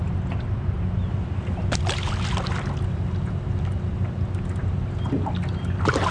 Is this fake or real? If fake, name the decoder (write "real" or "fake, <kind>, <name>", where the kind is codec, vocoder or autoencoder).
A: real